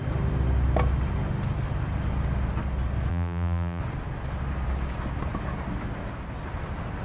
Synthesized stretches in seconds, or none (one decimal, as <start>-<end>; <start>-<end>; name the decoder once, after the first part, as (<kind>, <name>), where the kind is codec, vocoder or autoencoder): 3.1-3.8 (vocoder, BigVGAN v2)